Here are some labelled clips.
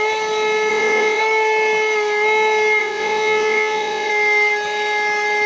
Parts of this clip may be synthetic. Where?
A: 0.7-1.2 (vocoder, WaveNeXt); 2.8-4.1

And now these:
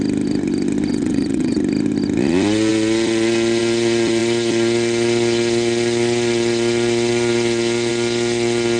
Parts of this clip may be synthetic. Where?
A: 0.9-1.6 (vocoder, WaveNeXt)

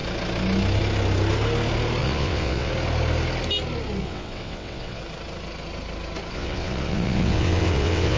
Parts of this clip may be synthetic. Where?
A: 2.0-2.7 (vocoder, WaveNeXt); 4.0-5.0; 6.3-8.2

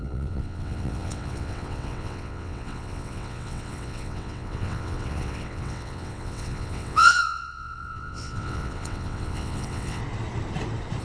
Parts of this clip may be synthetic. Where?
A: 0.0-10.0 (vocoder, WaveNeXt)

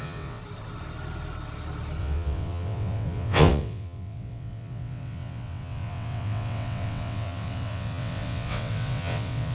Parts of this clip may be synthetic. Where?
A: 0.0-0.4 (vocoder, WaveNeXt); 2.0-9.5